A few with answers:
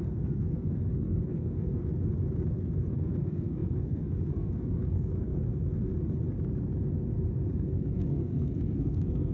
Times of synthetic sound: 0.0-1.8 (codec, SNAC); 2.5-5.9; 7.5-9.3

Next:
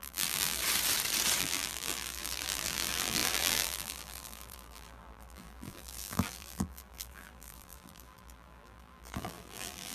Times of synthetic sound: 0.0-0.6 (vocoder, BigVGAN v2); 1.4-9.9

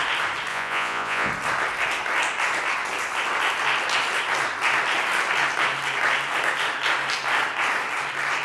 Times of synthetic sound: 0.5-1.3 (vocoder, Vocos)

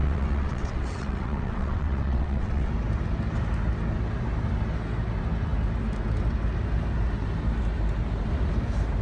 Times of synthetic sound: 0.0-2.7 (vocoder, WaveNeXt)

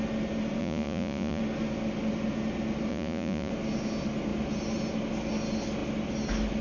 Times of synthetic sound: 0.6-1.4 (vocoder, Vocos); 2.9-3.5

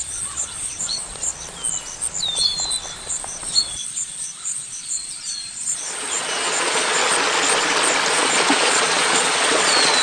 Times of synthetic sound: 0.0-1.3 (vocoder, Vocos); 3.0-7.0; 8.1-10.0